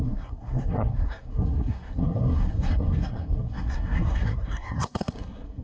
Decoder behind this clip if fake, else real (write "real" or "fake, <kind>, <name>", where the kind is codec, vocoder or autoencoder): fake, codec, SNAC